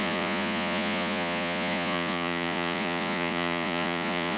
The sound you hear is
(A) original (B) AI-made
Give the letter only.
B